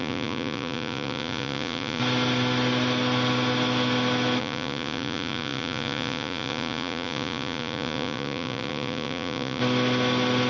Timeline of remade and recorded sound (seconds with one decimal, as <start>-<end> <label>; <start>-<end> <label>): 0.0-2.0 remade; 2.0-4.4 recorded; 4.4-9.6 remade; 9.6-10.5 recorded